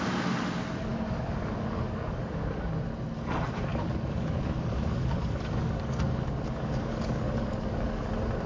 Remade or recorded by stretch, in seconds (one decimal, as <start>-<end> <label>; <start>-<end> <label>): 0.0-0.9 recorded; 0.9-2.7 remade; 2.7-3.7 recorded; 3.7-8.1 remade; 8.1-8.5 recorded